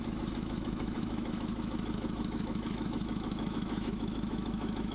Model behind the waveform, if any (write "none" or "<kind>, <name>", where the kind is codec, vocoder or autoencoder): autoencoder, DAC-VAE